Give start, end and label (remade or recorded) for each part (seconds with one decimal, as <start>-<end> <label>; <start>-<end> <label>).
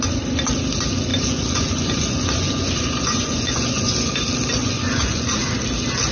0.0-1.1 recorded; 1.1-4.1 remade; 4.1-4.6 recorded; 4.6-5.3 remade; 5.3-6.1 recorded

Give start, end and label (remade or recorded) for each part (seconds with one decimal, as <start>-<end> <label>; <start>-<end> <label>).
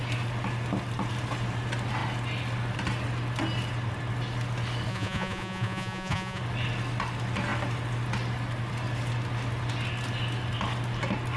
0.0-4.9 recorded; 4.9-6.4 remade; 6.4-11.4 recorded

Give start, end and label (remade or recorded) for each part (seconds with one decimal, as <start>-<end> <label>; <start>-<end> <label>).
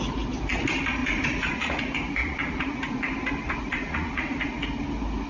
0.0-1.0 recorded; 1.0-1.8 remade; 1.8-2.2 recorded; 2.2-3.0 remade; 3.0-3.4 recorded; 3.4-4.5 remade; 4.5-5.3 recorded